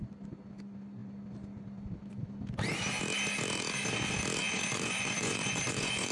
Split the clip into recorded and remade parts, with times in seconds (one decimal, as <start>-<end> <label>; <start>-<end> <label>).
0.0-4.4 recorded; 4.4-6.1 remade